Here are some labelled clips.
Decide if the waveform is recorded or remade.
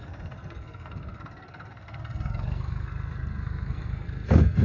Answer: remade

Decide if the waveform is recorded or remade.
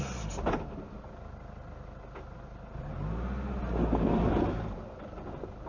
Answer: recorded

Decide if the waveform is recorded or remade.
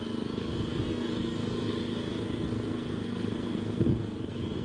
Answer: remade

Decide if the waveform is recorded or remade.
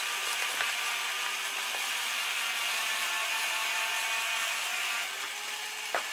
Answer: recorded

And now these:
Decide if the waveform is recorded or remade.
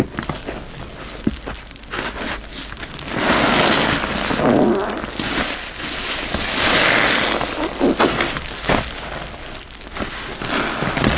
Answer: recorded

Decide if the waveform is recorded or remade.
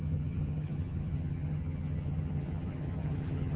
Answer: remade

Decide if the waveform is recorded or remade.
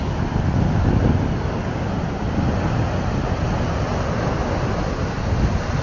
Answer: recorded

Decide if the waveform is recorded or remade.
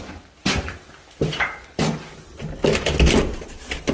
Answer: recorded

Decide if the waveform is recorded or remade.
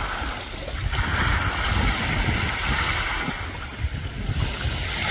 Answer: recorded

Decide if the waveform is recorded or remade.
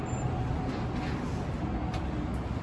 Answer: recorded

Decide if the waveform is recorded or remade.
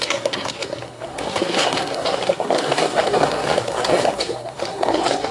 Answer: remade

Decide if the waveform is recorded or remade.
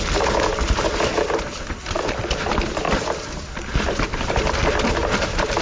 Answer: remade